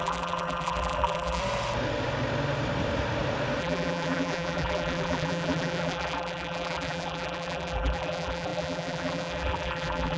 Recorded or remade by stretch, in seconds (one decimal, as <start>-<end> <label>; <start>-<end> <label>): 0.0-1.4 remade; 1.4-3.6 recorded; 3.6-10.2 remade